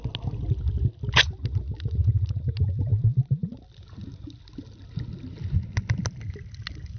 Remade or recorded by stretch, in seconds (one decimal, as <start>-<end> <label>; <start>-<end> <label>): 0.0-7.0 recorded